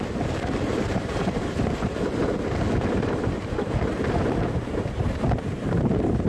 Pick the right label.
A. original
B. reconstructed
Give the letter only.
B